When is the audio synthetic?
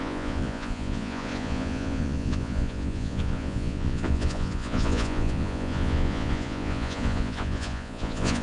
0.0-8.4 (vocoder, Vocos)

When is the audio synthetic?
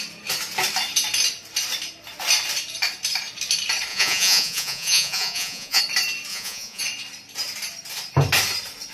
3.9-5.8 (vocoder, Vocos); 6.3-6.8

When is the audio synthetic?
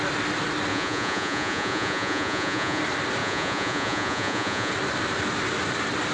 0.7-2.8 (vocoder, Vocos); 3.2-4.7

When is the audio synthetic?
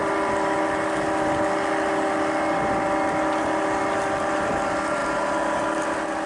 none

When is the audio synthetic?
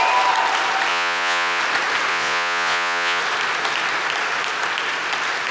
0.9-1.6 (vocoder, Vocos); 2.1-3.2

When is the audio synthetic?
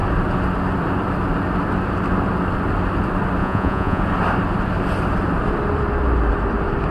3.4-4.0 (vocoder, Vocos)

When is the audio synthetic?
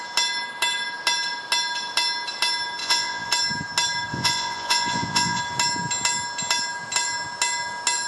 2.8-3.3 (vocoder, Vocos); 4.1-5.4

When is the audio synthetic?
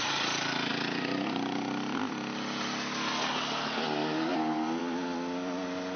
none